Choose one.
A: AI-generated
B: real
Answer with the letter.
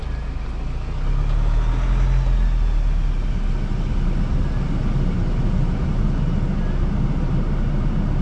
B